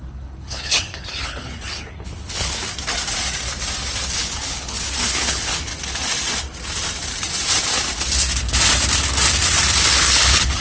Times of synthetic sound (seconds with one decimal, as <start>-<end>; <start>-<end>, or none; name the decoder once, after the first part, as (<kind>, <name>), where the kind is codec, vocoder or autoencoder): 0.0-2.6 (codec, HILCodec); 4.1-5.7; 10.0-10.6